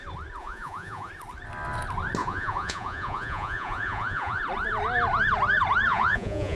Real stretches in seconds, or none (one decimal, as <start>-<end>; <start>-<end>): 0.0-0.4; 1.1-2.2; 4.4-5.9